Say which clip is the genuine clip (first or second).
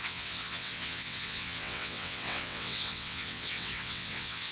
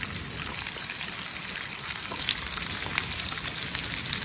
second